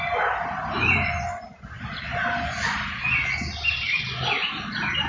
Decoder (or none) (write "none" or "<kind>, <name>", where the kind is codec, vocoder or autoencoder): none